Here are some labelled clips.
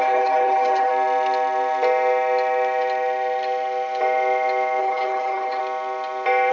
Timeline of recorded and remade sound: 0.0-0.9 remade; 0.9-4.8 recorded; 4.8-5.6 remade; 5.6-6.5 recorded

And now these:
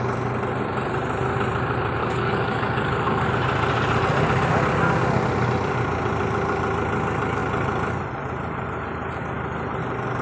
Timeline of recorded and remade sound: 0.0-2.0 recorded; 2.0-3.3 remade; 3.3-10.2 recorded

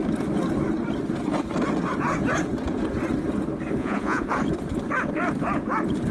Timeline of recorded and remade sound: 0.0-3.8 recorded; 3.8-4.3 remade; 4.3-6.1 recorded

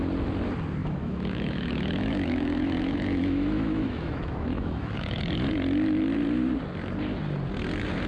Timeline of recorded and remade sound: 0.0-0.8 recorded; 0.8-5.2 remade; 5.2-8.1 recorded

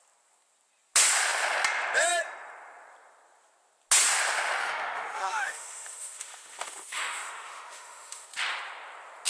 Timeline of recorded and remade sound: 0.0-4.6 recorded; 4.6-8.3 remade; 8.3-9.3 recorded

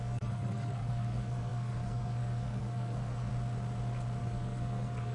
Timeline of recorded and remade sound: 0.0-3.3 remade; 3.3-4.2 recorded; 4.2-5.1 remade

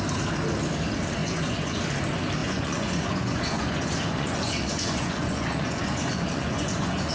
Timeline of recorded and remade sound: 0.0-1.2 recorded; 1.2-1.8 remade; 1.8-2.4 recorded; 2.4-7.1 remade

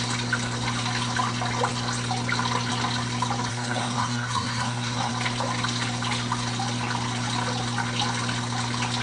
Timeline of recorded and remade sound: 0.0-3.5 recorded; 3.5-5.1 remade; 5.1-9.0 recorded